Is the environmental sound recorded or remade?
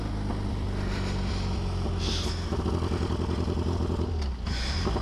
recorded